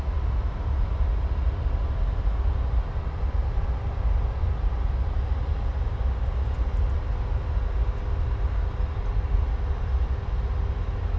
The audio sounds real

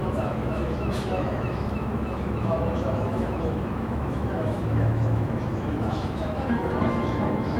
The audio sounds fake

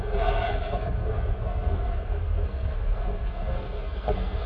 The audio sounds fake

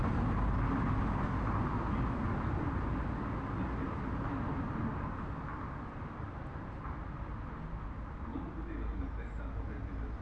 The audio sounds real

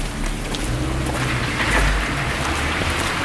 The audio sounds real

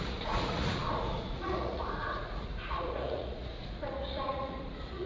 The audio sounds fake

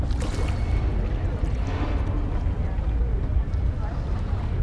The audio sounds real